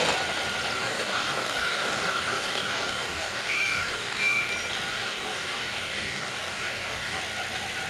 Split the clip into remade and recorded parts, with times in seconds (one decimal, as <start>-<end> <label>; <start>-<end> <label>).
0.0-0.8 recorded; 0.8-4.5 remade; 4.5-4.9 recorded; 4.9-7.2 remade; 7.2-7.9 recorded